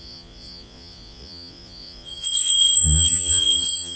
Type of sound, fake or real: fake